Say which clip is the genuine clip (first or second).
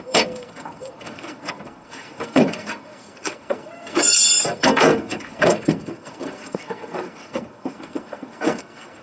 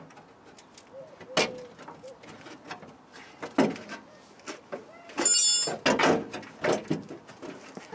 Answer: second